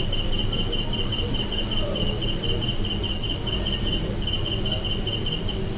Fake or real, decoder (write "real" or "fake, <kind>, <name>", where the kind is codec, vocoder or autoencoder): real